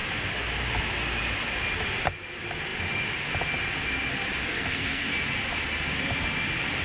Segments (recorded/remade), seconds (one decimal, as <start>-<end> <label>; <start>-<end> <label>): 0.0-4.5 recorded; 4.5-5.1 remade; 5.1-6.8 recorded